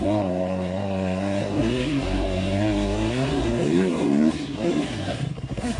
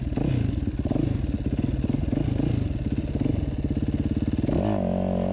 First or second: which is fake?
first